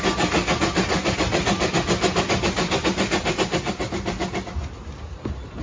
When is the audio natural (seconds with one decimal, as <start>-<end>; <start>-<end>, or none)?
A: 0.0-5.6